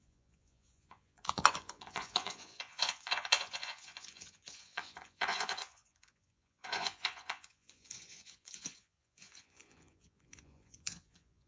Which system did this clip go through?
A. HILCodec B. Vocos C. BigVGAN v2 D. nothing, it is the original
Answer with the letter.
B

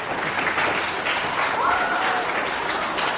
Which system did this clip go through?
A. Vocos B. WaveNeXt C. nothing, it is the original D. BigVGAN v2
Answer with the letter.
C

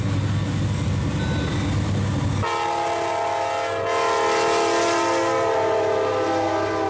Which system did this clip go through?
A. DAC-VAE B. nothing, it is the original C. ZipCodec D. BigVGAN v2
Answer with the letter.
B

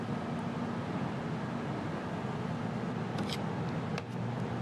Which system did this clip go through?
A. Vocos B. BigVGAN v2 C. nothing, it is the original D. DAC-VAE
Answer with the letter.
C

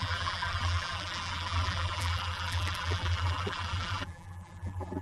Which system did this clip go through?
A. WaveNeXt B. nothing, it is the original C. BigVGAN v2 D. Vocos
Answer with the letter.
C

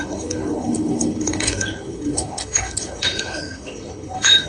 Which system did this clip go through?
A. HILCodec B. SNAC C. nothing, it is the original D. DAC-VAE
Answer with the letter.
A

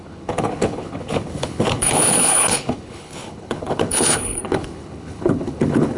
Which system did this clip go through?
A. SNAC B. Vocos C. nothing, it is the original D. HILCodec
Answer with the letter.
D